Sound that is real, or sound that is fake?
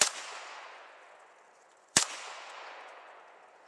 fake